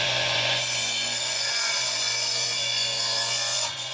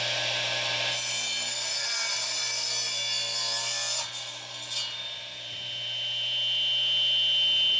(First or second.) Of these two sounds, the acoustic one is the second